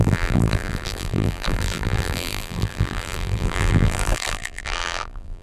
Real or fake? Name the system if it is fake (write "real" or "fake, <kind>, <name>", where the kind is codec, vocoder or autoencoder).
fake, vocoder, BigVGAN v2